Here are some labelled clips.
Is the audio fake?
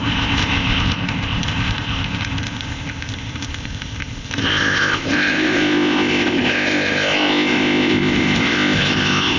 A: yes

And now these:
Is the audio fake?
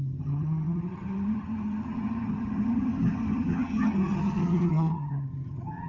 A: yes